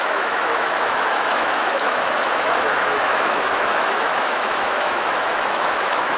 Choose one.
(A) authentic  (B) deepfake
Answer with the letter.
B